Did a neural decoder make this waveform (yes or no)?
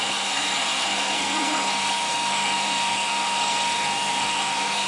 yes